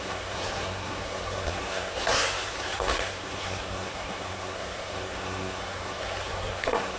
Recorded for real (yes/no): no